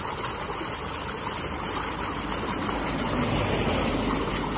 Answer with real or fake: real